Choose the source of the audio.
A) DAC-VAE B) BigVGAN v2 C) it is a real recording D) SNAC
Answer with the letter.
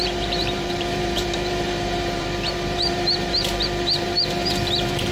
B